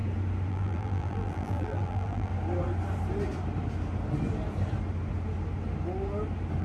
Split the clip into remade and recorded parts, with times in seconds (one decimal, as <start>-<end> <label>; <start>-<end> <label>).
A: 0.0-0.5 recorded; 0.5-2.3 remade; 2.3-6.6 recorded